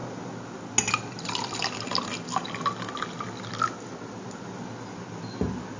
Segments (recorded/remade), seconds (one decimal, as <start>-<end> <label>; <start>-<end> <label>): 0.0-5.8 recorded

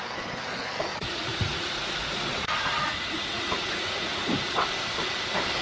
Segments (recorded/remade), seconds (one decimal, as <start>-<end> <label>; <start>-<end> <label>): 0.0-0.9 recorded; 0.9-4.3 remade; 4.3-5.6 recorded